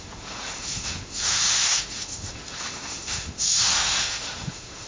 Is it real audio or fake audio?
fake